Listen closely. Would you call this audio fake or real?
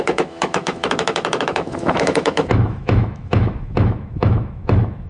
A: fake